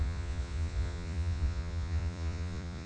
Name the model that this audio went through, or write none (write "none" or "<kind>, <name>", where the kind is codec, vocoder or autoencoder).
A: vocoder, Vocos